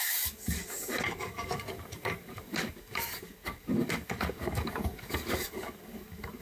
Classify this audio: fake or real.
fake